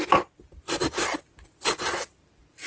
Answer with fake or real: real